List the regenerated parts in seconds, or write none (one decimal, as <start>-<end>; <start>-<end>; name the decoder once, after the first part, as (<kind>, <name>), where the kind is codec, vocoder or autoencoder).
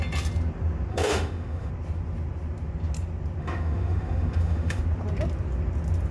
0.9-1.7 (autoencoder, DAC-VAE); 3.4-4.8